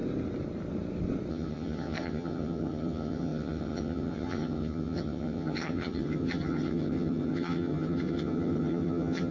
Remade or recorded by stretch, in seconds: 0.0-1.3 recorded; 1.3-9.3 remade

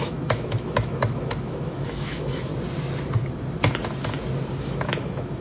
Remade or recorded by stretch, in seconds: 0.0-2.5 remade; 2.5-4.6 recorded; 4.6-5.4 remade

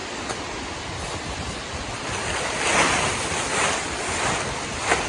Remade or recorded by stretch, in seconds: 0.0-5.1 recorded

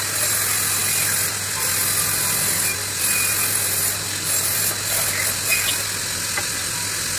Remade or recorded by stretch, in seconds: 0.0-7.2 recorded

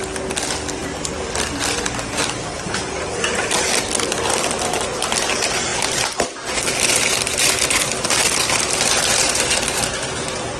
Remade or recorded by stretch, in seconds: 0.0-10.6 recorded

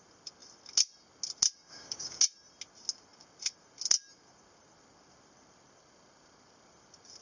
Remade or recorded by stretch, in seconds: 0.0-1.7 recorded; 1.7-2.2 remade; 2.2-7.2 recorded

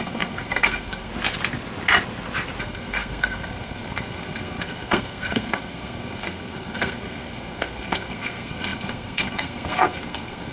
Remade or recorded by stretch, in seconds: 0.0-1.1 remade; 1.1-2.6 recorded; 2.6-10.5 remade

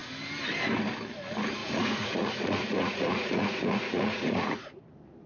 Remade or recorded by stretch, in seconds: 0.0-1.6 recorded; 1.6-4.8 remade; 4.8-5.3 recorded